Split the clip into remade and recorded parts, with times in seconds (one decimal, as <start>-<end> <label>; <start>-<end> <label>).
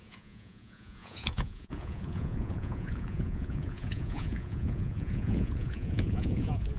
0.0-6.8 remade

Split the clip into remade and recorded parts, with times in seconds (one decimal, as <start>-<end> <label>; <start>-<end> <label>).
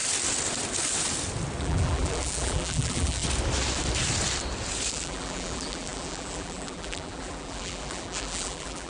0.0-1.6 recorded; 1.6-3.2 remade; 3.2-4.9 recorded; 4.9-8.9 remade